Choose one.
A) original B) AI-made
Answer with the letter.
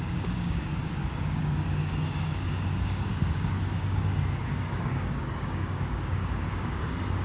B